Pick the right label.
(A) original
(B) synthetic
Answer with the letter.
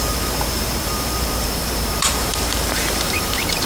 B